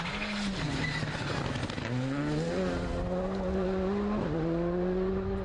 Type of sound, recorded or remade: recorded